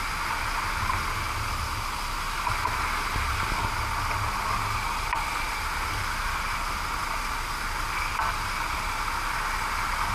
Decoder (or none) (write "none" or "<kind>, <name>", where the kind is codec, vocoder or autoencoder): none